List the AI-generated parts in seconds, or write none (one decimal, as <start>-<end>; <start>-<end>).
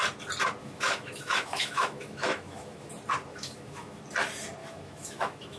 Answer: 0.6-2.9; 3.3-4.0; 4.6-5.6